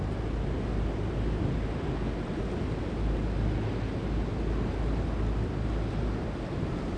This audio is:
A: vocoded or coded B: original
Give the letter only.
B